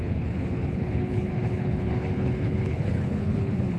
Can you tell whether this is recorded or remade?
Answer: remade